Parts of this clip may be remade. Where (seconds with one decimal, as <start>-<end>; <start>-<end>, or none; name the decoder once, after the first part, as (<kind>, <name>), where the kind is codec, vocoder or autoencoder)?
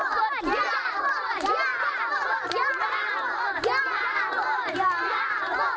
0.0-5.8 (vocoder, BigVGAN v2)